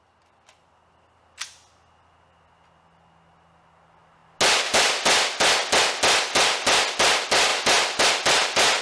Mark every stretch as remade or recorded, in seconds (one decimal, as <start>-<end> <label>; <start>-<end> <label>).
0.0-8.8 recorded